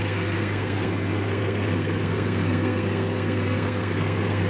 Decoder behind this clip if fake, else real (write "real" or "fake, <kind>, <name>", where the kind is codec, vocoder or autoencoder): fake, codec, SNAC